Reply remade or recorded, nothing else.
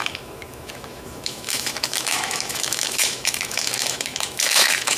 remade